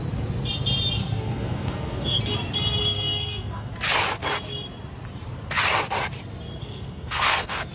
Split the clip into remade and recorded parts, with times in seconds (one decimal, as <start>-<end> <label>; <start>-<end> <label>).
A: 0.0-1.0 recorded; 1.0-2.2 remade; 2.2-2.8 recorded; 2.8-3.7 remade; 3.7-6.6 recorded; 6.6-7.7 remade